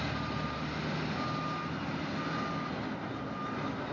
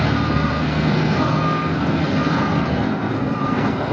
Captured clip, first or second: first